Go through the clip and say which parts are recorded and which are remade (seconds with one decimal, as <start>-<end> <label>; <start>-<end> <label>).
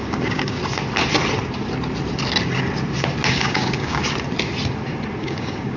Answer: 0.0-0.6 remade; 0.6-3.3 recorded; 3.3-4.0 remade; 4.0-5.2 recorded; 5.2-5.8 remade